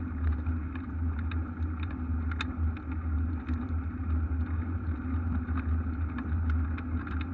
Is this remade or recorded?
recorded